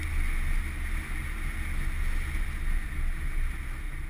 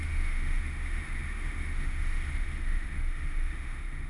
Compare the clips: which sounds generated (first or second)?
second